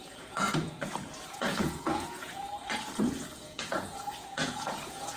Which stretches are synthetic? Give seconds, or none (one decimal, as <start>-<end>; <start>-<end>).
0.0-5.2